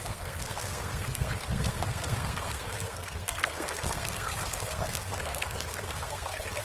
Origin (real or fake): fake